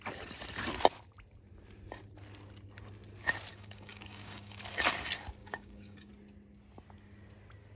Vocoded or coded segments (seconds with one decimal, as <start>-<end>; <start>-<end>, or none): 3.5-4.6; 5.4-6.1